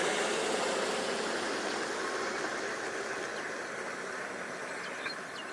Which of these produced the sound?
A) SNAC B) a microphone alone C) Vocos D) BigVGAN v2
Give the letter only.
B